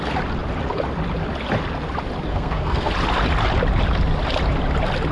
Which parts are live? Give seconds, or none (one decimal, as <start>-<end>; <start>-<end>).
0.0-2.3; 2.9-5.1